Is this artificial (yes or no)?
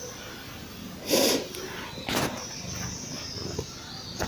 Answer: no